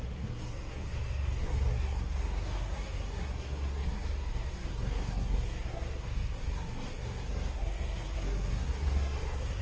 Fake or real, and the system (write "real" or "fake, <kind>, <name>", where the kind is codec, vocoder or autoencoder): fake, codec, SNAC